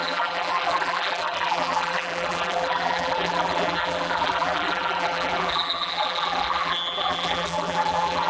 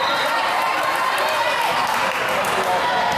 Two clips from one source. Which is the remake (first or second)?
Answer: first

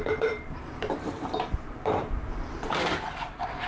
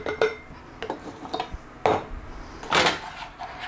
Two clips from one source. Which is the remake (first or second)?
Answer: first